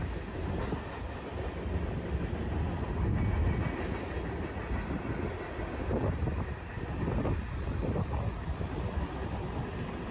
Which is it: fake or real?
real